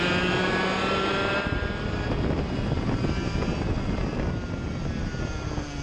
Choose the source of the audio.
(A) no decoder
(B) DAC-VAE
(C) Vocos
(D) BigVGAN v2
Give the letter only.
A